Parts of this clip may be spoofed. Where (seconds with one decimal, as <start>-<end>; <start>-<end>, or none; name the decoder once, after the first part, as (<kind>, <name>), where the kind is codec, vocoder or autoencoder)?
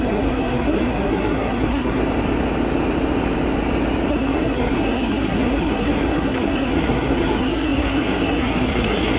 0.0-2.0 (codec, SNAC); 4.1-9.2